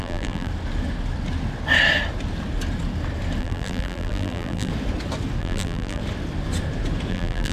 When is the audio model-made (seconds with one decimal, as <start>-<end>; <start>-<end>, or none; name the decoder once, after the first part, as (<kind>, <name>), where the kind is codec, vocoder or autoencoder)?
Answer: 0.0-0.5 (vocoder, BigVGAN v2); 3.4-4.7; 5.4-6.0; 7.1-7.5